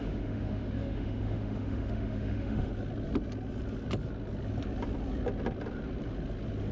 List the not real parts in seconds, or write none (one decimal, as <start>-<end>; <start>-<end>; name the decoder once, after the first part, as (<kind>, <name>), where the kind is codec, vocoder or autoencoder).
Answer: 0.0-2.7 (autoencoder, DAC-VAE)